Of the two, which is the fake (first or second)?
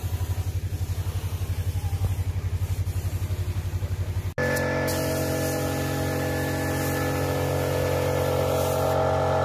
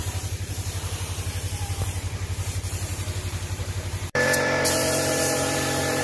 second